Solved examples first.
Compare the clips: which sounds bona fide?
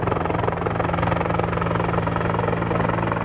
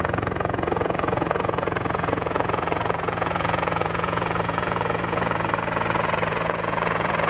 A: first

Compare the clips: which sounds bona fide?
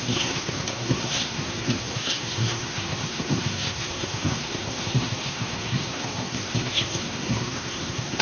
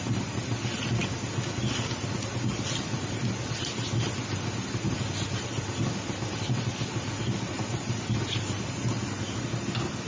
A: second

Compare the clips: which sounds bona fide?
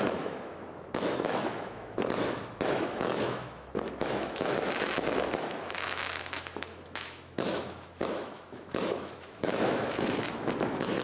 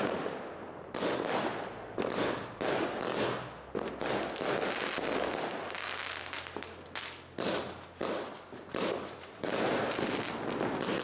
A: second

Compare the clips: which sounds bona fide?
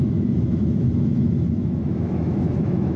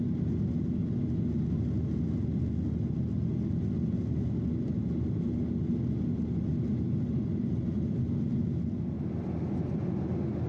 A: second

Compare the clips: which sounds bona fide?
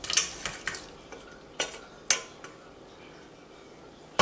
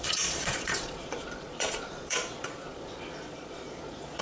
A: first